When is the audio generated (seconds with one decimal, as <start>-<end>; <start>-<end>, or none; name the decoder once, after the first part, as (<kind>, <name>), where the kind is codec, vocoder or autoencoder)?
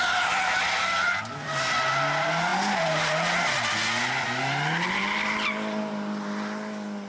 none